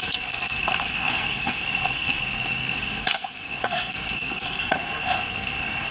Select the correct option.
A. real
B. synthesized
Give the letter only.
B